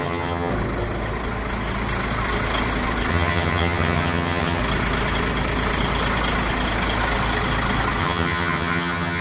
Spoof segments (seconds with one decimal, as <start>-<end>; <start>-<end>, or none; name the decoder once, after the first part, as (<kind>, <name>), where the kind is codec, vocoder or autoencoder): 0.0-0.5 (vocoder, HiFi-GAN); 3.1-4.6; 8.0-9.2